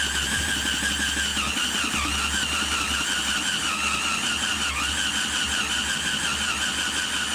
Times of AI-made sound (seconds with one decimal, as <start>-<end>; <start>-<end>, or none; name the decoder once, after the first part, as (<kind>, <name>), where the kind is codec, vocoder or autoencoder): none